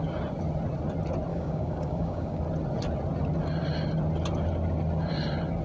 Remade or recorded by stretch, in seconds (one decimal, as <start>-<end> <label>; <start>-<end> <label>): 0.0-1.3 recorded; 1.3-2.4 remade; 2.4-5.6 recorded